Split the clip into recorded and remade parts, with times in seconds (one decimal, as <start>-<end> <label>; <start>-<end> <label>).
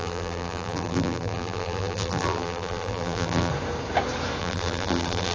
0.0-3.5 remade; 3.5-4.4 recorded; 4.4-5.3 remade